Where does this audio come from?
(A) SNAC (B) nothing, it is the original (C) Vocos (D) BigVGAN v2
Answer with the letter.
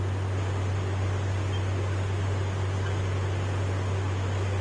B